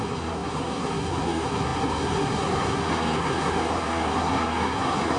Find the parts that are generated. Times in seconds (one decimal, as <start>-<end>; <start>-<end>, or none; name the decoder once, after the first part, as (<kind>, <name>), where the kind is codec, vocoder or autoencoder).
0.0-5.2 (codec, SNAC)